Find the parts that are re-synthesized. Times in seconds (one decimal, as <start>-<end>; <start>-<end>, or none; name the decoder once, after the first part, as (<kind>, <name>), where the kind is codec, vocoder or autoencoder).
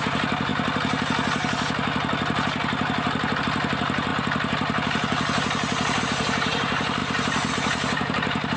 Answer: 0.0-0.5 (vocoder, BigVGAN v2); 3.4-4.1; 6.0-8.6